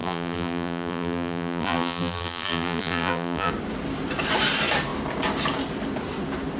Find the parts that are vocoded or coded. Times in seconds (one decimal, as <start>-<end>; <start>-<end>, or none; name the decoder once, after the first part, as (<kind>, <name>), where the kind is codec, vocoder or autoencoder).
0.0-3.5 (vocoder, BigVGAN v2)